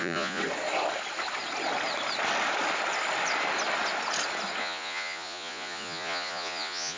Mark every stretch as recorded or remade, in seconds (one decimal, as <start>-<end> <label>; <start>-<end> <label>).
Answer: 0.0-0.4 remade; 0.4-4.6 recorded; 4.6-7.0 remade